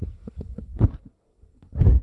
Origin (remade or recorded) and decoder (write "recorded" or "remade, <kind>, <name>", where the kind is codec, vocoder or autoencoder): remade, codec, SNAC